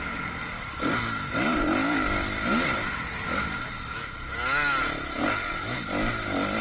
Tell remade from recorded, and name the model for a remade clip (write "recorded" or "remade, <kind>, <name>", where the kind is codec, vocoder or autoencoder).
recorded